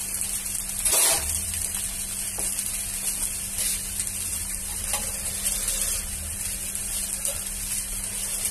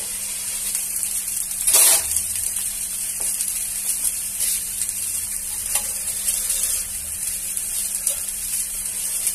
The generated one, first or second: second